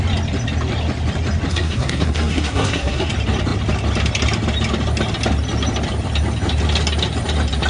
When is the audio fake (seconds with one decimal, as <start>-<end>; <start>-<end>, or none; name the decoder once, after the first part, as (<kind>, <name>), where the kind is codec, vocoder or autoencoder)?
1.5-3.1 (codec, SNAC)